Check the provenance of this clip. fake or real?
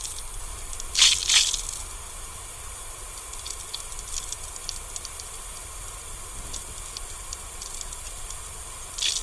real